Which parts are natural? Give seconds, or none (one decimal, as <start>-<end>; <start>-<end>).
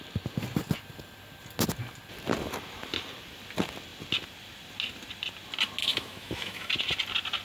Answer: 0.0-5.8; 6.7-7.4